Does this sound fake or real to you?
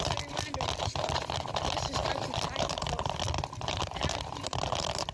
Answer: real